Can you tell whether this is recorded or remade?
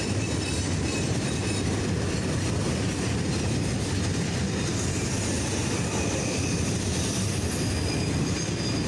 remade